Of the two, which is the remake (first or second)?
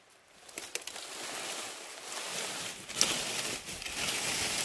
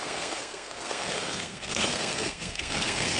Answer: second